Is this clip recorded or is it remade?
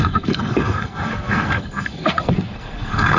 remade